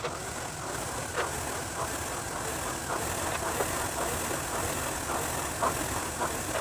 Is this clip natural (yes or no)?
yes